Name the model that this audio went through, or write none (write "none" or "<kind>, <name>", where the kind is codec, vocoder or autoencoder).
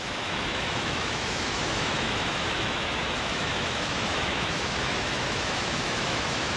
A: autoencoder, DAC-VAE